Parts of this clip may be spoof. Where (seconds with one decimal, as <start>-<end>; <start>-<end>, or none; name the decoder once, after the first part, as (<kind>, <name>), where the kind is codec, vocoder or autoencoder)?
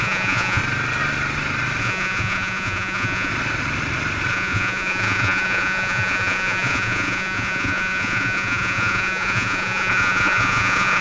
0.0-0.6 (vocoder, Vocos); 1.8-3.3; 4.3-11.0